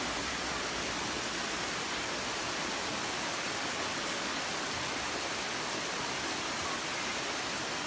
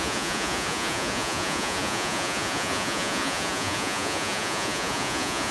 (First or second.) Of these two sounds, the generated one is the second